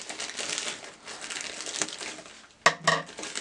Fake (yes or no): no